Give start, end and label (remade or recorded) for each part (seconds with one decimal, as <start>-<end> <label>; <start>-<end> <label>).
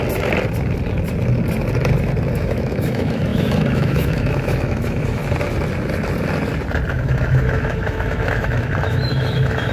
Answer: 0.0-2.3 recorded; 2.3-5.2 remade; 5.2-6.9 recorded; 6.9-9.7 remade